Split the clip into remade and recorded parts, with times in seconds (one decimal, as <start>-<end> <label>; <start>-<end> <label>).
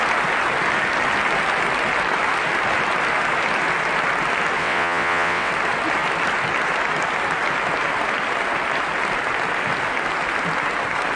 0.0-4.6 recorded; 4.6-5.5 remade; 5.5-11.2 recorded